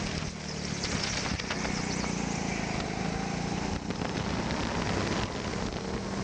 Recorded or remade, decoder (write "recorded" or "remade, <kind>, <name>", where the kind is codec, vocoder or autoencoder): recorded